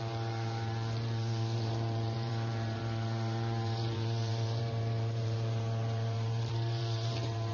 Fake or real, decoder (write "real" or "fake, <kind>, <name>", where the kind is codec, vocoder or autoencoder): fake, vocoder, BigVGAN v2